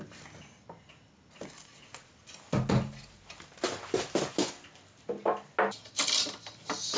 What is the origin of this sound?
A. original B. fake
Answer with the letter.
A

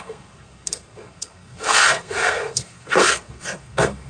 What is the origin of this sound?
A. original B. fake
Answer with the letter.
B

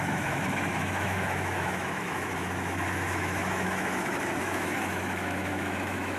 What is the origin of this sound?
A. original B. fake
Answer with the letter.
B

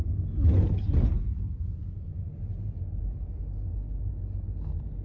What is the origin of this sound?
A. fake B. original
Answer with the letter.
B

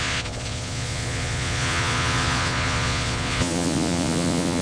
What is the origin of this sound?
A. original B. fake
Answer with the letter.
B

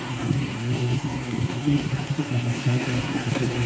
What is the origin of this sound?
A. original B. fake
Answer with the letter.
B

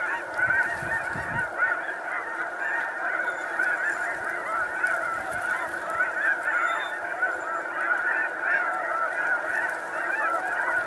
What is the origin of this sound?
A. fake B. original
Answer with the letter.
A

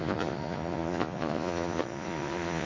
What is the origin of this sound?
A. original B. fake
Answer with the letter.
B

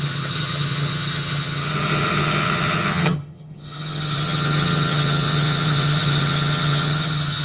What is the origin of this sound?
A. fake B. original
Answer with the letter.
A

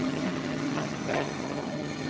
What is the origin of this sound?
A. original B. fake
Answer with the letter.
B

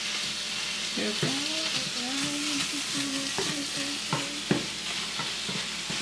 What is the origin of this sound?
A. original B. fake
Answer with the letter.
A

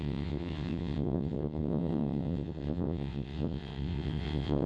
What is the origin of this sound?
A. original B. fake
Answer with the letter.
B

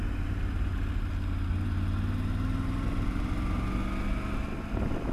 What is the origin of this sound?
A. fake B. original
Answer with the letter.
B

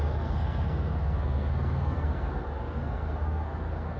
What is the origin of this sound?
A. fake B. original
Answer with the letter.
A